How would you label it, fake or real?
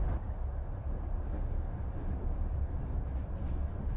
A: real